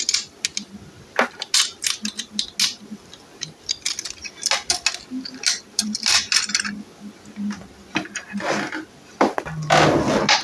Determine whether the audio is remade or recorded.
recorded